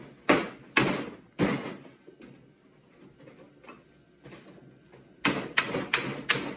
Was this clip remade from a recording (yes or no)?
no